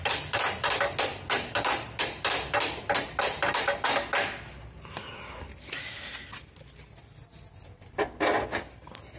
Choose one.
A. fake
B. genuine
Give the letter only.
B